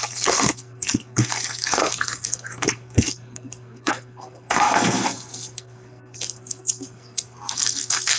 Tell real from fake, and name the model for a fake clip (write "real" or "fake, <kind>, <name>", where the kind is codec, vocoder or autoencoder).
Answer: fake, codec, SNAC